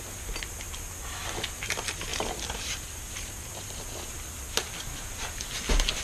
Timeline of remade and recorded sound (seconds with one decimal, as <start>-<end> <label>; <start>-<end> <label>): 0.0-2.1 recorded; 2.1-3.8 remade; 3.8-6.0 recorded